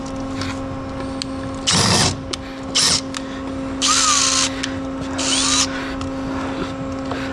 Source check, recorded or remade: recorded